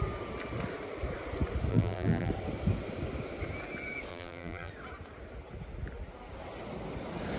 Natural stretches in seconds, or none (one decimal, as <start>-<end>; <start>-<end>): 0.0-1.7; 2.3-4.1; 4.7-7.4